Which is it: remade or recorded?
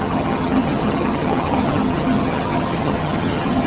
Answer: remade